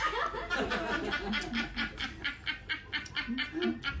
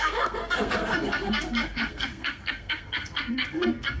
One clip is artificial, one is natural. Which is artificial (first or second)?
second